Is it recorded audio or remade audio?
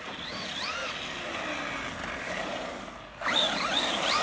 recorded